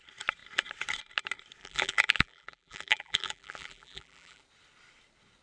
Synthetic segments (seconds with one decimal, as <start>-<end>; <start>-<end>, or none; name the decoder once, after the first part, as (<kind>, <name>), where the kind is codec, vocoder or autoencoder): 1.6-4.4 (vocoder, BigVGAN v2)